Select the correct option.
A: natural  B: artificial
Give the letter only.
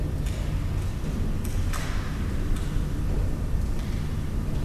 A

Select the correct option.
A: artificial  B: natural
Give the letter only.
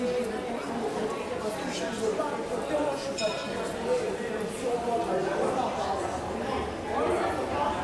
B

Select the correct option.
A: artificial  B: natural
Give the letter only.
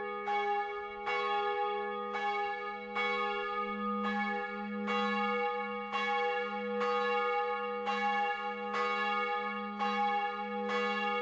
B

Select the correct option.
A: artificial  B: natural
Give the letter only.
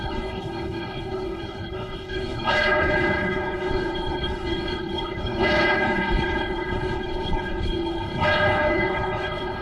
A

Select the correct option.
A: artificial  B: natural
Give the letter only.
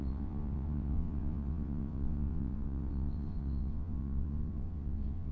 A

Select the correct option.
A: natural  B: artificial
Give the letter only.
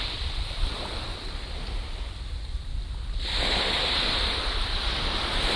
A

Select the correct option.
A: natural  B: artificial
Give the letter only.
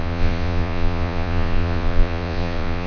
B